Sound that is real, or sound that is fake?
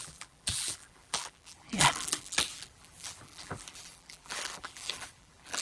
fake